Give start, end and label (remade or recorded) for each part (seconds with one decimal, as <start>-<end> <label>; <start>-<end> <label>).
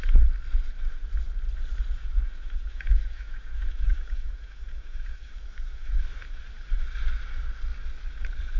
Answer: 0.0-2.0 recorded; 2.0-6.4 remade; 6.4-8.6 recorded